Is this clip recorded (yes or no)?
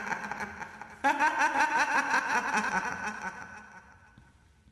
no